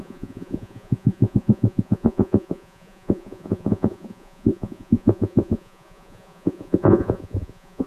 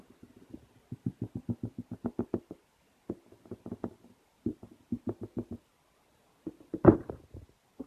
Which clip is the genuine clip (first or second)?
second